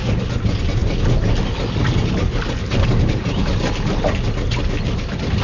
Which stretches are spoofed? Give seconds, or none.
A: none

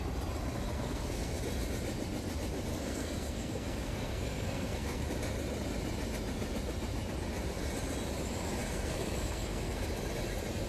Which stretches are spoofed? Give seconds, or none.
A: 0.7-1.4; 2.7-5.1; 8.6-9.8

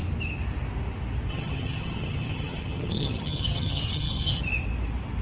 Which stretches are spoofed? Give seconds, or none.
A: 1.3-4.4

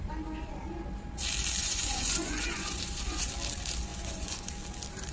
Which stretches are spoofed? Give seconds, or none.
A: 1.6-3.3; 3.9-4.5

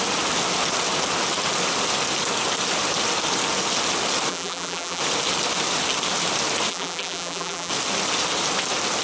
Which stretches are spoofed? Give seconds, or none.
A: 4.3-5.0; 6.7-7.7

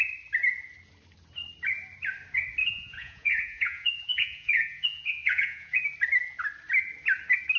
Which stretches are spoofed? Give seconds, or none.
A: 2.6-5.8